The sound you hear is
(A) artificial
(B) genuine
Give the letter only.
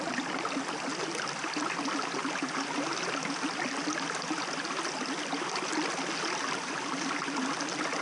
B